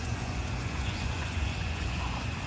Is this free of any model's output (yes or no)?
no